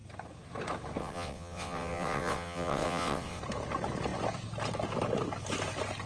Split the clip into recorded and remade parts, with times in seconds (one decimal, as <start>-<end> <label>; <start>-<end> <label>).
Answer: 0.0-1.0 recorded; 1.0-3.4 remade; 3.4-6.1 recorded